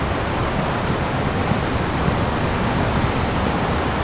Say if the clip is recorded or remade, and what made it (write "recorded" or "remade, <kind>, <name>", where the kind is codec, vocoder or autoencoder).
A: recorded